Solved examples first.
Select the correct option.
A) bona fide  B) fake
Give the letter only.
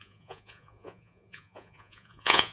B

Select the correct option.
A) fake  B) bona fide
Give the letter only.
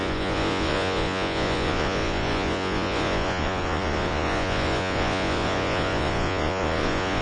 A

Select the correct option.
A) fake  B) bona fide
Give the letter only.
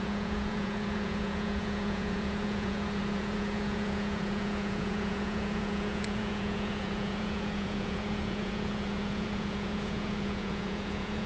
A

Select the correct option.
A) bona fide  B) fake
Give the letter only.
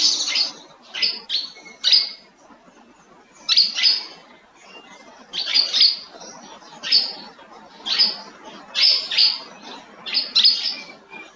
A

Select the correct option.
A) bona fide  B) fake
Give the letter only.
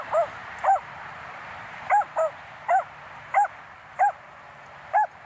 A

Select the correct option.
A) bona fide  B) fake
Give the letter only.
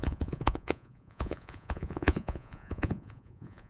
B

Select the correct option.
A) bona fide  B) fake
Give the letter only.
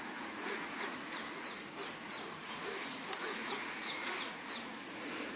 B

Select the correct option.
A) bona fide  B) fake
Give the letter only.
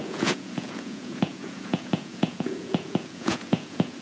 B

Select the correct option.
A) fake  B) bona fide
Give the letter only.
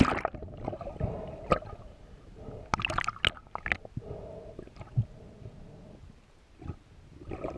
B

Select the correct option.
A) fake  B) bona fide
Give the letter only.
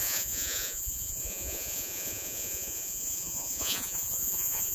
A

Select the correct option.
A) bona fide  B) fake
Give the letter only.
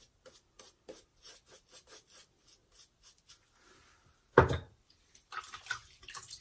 A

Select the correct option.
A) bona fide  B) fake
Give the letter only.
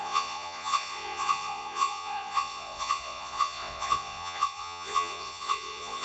B